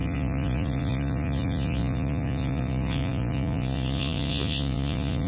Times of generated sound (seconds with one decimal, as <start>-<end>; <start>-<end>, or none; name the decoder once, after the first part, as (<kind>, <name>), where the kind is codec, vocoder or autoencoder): 0.0-5.3 (vocoder, Vocos)